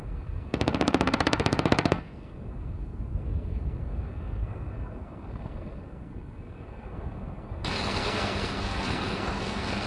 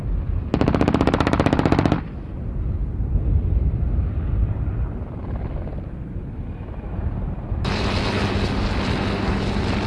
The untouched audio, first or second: second